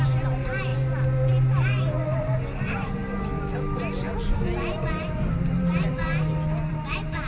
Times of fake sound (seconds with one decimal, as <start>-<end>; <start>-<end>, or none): 0.0-0.7; 1.3-6.0; 6.7-7.3